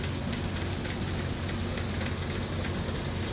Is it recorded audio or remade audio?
recorded